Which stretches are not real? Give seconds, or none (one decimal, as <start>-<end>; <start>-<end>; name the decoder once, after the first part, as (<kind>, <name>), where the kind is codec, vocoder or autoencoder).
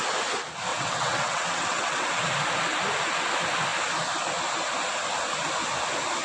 0.7-2.2 (vocoder, WaveNeXt)